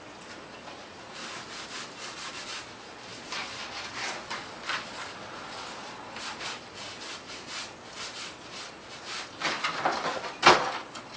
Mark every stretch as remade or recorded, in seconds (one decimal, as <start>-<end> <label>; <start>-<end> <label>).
0.0-11.2 recorded